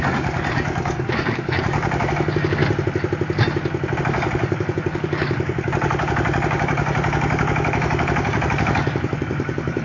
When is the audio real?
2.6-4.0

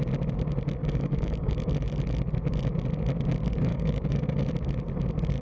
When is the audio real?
0.0-0.8; 1.7-3.7; 4.5-5.4

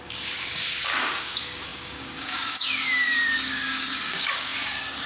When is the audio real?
none